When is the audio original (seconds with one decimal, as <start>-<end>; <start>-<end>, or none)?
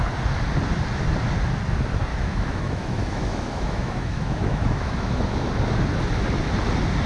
0.0-2.1; 5.5-7.1